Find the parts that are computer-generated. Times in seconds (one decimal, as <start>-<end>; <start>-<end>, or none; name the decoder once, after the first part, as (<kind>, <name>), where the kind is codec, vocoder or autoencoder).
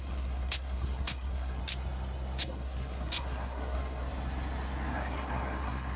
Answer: 0.0-1.6 (codec, SNAC); 2.4-4.0; 4.9-6.0